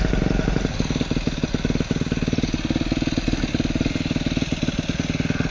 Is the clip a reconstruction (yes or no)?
no